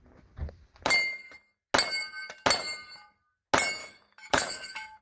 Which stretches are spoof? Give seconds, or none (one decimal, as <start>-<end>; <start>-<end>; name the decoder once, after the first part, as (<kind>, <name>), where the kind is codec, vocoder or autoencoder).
3.8-5.0 (autoencoder, DAC-VAE)